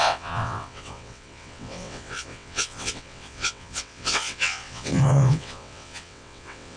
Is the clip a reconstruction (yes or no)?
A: yes